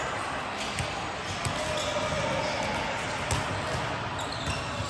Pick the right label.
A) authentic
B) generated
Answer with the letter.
A